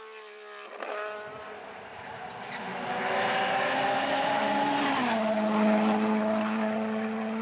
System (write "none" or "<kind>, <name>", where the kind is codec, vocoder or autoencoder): none